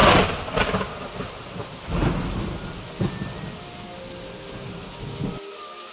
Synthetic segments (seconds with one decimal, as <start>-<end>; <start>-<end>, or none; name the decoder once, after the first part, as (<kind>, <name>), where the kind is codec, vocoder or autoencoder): none